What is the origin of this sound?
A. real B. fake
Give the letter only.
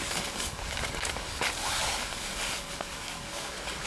B